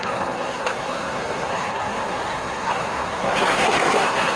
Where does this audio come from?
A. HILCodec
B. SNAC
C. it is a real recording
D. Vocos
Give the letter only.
B